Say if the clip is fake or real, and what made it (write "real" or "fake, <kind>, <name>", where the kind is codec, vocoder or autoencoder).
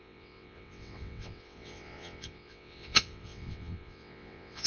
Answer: fake, vocoder, WaveNeXt